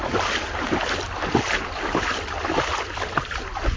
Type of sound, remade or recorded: recorded